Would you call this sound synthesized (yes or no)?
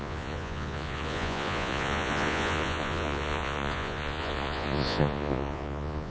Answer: yes